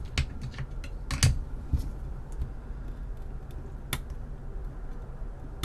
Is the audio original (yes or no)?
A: yes